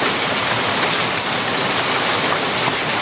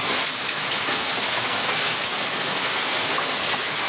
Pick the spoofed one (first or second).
second